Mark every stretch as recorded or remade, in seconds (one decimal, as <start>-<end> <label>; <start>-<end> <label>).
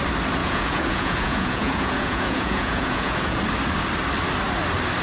0.0-0.4 recorded; 0.4-3.4 remade; 3.4-5.0 recorded